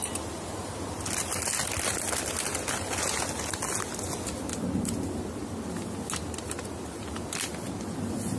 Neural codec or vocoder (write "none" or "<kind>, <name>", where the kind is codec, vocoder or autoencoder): none